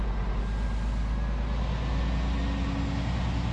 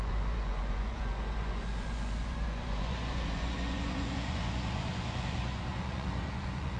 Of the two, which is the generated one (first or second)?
second